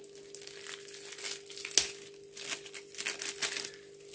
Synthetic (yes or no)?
no